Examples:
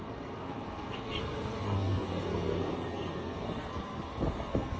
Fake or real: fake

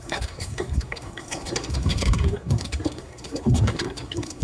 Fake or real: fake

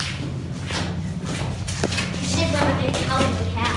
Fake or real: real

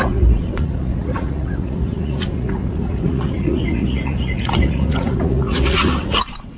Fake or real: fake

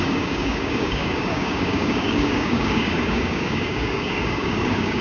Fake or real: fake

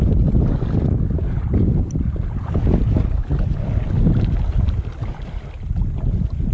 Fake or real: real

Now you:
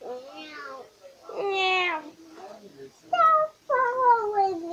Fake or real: real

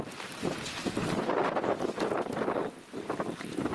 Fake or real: real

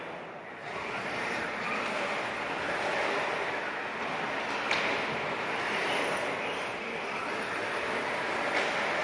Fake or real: real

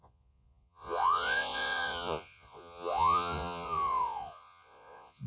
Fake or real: fake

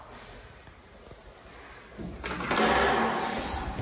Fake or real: real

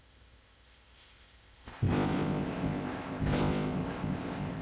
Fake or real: fake